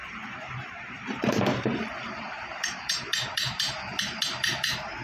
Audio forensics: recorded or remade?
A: remade